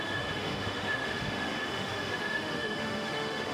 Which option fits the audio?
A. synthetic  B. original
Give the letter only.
A